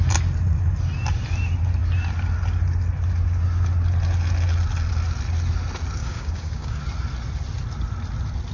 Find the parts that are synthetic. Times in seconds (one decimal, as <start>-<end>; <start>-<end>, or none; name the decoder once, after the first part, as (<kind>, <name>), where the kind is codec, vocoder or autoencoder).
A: 6.0-6.8 (codec, DAC)